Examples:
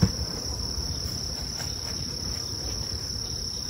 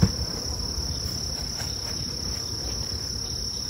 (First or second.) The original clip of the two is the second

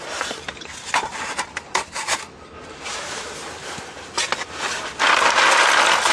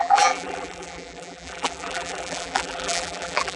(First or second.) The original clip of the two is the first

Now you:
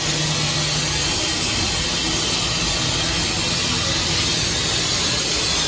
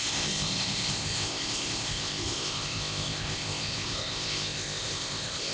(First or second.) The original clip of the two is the first